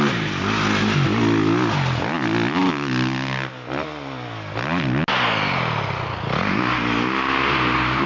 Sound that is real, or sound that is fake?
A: real